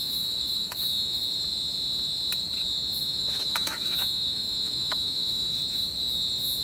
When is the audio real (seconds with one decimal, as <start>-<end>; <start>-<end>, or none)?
1.2-3.0; 5.6-6.6

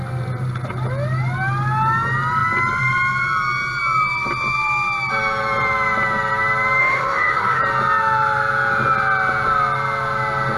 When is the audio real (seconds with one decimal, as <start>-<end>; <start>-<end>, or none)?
0.0-6.8; 7.6-10.6

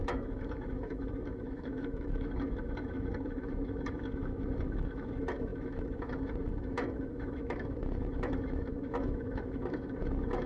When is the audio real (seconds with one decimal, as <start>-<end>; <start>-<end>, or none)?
none

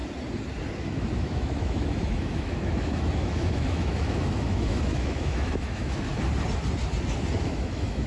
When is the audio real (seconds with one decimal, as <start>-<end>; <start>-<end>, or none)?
0.0-0.8; 6.1-7.4

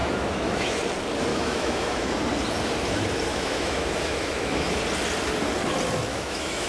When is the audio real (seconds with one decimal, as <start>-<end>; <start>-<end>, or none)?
0.8-1.3; 2.1-3.3; 4.8-6.1

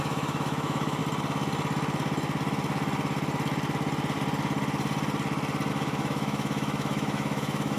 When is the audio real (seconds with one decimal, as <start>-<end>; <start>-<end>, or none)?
1.0-5.7